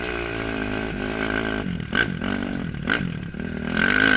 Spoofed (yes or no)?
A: no